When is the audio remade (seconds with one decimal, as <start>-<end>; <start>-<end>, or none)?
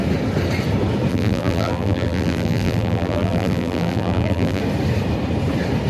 1.1-4.6